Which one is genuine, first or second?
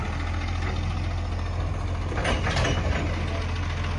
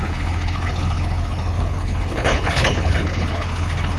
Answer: first